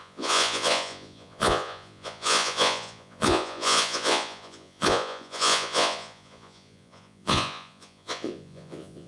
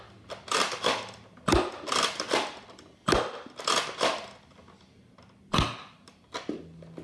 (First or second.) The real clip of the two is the second